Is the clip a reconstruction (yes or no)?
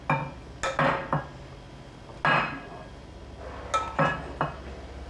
no